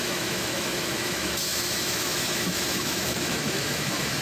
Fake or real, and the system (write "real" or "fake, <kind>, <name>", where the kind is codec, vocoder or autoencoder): fake, autoencoder, DAC-VAE